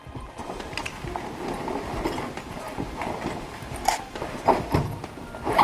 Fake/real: real